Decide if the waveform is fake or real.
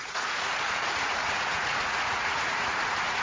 fake